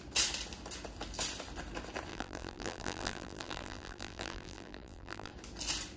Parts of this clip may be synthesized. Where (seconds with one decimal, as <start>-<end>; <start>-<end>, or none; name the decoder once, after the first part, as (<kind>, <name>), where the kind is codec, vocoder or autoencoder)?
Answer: 2.1-5.3 (vocoder, BigVGAN v2)